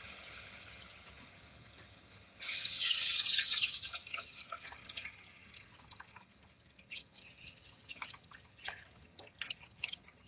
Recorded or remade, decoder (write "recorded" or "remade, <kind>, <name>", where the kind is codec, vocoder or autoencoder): remade, vocoder, HiFi-GAN